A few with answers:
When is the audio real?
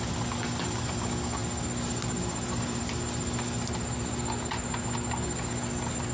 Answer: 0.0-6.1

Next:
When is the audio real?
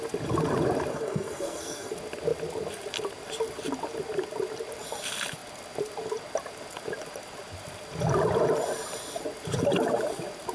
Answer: 0.0-0.9; 1.9-10.5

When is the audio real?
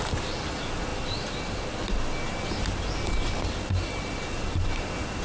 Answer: 0.0-5.2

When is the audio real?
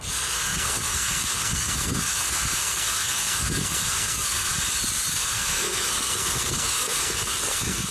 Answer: 4.5-5.1